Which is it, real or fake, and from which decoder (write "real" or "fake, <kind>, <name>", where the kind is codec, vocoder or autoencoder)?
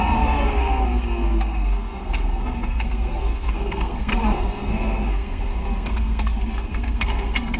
fake, codec, SNAC